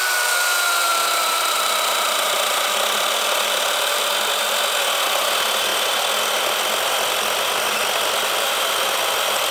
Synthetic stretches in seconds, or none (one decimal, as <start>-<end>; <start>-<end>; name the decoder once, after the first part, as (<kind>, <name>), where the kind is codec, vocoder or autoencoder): 0.9-4.0 (vocoder, BigVGAN v2)